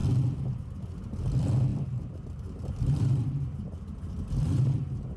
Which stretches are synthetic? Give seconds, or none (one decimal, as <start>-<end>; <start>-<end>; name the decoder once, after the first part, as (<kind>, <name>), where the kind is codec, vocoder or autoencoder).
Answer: 1.7-4.8 (vocoder, BigVGAN v2)